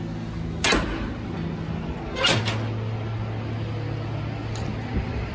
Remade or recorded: recorded